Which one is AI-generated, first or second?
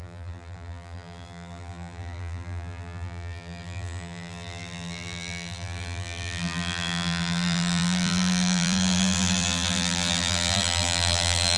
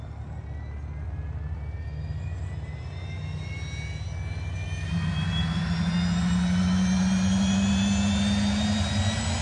first